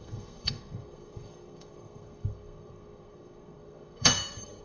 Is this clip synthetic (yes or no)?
yes